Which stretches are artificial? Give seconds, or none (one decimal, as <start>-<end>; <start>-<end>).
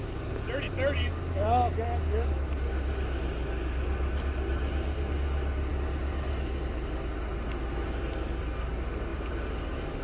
none